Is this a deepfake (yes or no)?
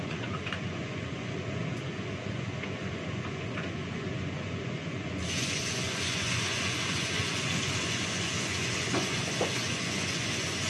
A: yes